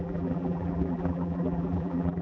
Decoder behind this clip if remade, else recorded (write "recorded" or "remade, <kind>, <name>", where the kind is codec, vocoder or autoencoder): remade, vocoder, BigVGAN v2